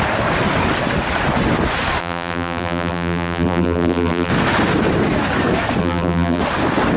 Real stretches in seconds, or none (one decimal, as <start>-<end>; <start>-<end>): 0.0-2.0; 4.3-5.8; 6.4-7.0